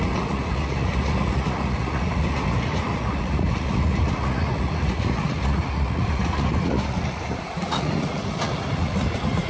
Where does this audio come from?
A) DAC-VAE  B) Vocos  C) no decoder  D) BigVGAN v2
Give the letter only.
B